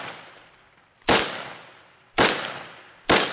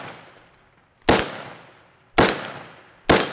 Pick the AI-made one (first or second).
first